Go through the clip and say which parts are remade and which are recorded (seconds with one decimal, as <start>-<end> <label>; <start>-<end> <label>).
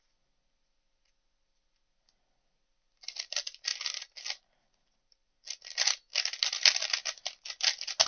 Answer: 0.0-8.1 recorded